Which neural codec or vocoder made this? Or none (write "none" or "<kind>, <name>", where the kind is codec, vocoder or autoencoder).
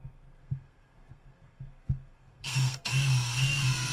codec, SNAC